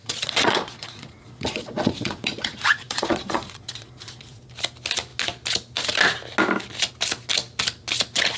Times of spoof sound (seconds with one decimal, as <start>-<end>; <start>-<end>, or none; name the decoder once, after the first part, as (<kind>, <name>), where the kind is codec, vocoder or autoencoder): 0.0-4.5 (vocoder, Vocos)